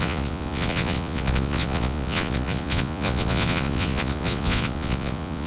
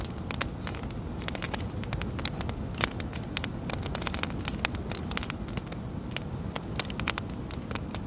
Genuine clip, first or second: second